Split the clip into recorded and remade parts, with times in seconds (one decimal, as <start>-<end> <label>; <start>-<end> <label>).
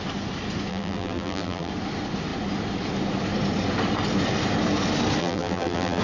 0.0-0.7 recorded; 0.7-1.7 remade; 1.7-5.2 recorded; 5.2-6.0 remade